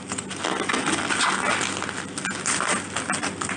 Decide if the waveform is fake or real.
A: real